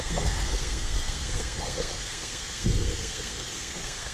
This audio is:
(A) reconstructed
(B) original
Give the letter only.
A